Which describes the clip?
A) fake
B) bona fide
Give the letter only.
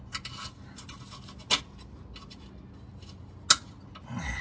B